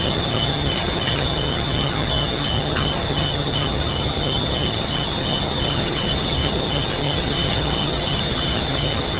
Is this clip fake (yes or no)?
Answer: yes